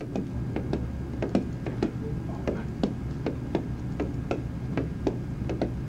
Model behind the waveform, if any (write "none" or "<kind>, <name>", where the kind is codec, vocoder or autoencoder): none